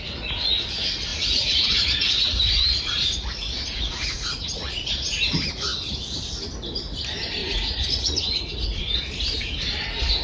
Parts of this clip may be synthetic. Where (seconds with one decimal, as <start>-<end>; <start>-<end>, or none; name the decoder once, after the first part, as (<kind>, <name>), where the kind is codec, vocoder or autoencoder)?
1.1-4.9 (vocoder, Vocos); 7.4-9.0